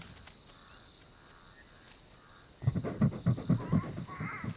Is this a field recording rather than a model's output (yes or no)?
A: yes